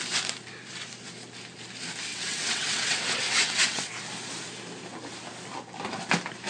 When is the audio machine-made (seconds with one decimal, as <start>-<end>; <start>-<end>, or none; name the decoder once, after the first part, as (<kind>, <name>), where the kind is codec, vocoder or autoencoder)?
2.1-3.9 (vocoder, WaveNeXt)